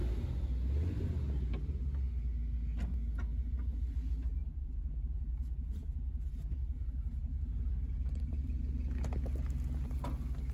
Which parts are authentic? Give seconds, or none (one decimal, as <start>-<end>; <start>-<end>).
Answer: 0.0-3.3; 8.6-10.5